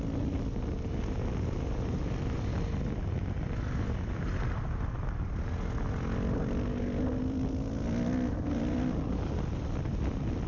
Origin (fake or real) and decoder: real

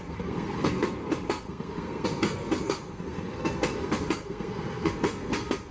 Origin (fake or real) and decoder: fake, codec, SNAC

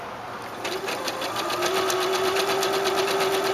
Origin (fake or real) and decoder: real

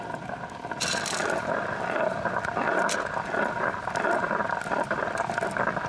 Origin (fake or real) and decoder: real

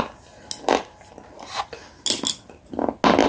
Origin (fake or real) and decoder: real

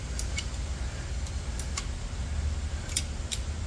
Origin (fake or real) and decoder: real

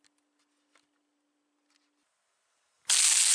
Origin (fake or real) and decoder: real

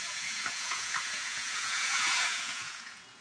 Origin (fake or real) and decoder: fake, vocoder, Vocos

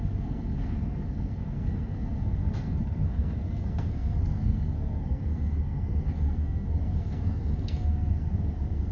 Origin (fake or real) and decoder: fake, codec, SNAC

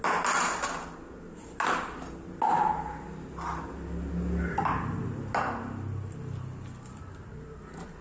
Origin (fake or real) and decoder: real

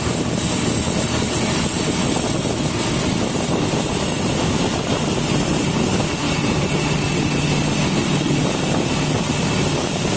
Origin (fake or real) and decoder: real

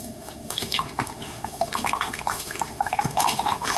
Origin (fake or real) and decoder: fake, autoencoder, DAC-VAE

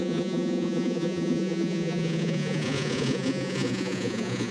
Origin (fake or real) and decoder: fake, vocoder, Vocos